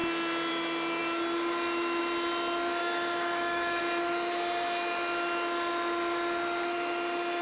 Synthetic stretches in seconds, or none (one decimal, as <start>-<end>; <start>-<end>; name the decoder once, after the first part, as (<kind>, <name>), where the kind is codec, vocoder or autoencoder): 2.8-3.8 (autoencoder, DAC-VAE)